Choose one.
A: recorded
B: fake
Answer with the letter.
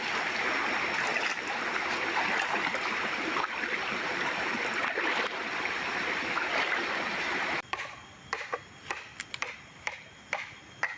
B